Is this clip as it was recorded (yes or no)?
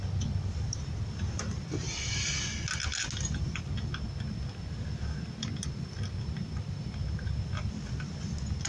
yes